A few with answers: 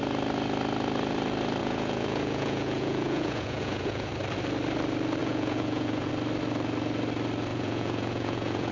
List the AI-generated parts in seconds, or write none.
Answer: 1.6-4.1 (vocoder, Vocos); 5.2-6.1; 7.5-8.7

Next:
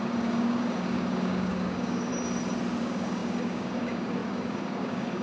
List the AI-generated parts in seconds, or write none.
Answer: 0.0-2.1 (codec, DAC); 2.8-5.2

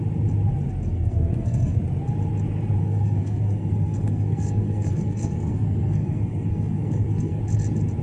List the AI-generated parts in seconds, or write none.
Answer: 0.9-1.8 (codec, SNAC); 2.8-7.4

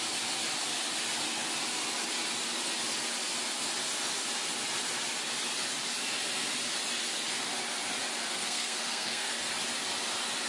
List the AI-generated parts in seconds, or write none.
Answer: 8.3-9.3 (codec, SNAC)

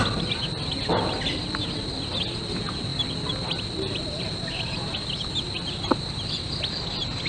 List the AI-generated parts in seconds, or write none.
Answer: none

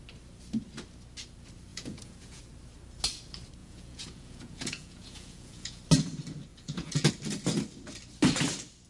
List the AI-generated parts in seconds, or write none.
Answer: 1.7-2.4 (vocoder, Vocos); 3.6-5.8; 6.5-7.1

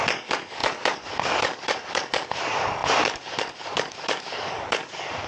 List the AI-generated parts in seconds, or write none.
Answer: 0.0-5.3 (codec, DAC)